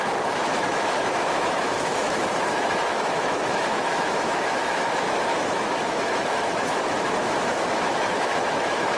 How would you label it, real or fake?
fake